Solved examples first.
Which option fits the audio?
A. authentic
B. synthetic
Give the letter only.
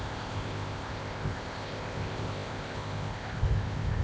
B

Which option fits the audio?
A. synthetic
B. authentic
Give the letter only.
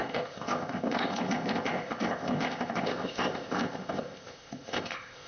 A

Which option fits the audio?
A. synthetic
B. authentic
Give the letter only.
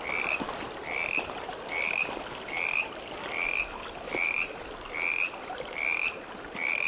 B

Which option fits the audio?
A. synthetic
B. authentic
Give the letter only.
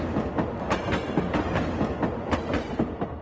B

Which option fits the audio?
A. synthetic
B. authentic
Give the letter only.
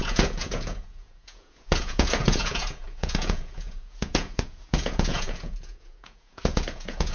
A